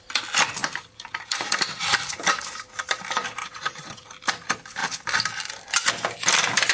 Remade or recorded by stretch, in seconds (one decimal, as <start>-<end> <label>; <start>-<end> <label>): 0.0-3.4 recorded; 3.4-4.1 remade; 4.1-6.7 recorded